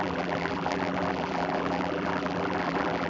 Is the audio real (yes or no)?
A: no